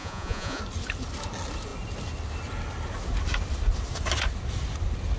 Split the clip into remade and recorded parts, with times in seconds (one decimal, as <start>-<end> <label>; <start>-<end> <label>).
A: 0.0-0.6 remade; 0.6-5.2 recorded